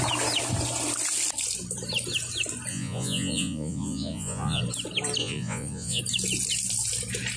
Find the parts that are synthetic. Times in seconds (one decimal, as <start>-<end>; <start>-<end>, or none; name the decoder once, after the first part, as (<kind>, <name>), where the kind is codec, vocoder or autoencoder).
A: 2.7-4.6 (vocoder, Vocos); 5.2-6.0